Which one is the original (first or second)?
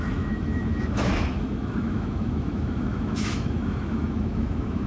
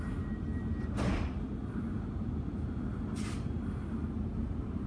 second